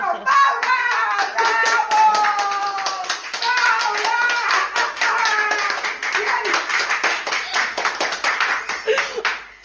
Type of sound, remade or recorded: recorded